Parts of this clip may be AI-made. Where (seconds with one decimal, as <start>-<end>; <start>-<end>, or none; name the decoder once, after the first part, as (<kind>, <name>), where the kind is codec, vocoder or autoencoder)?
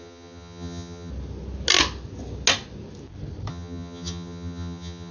0.0-1.1 (vocoder, HiFi-GAN); 3.5-5.1